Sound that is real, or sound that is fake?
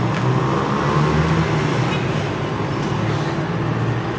real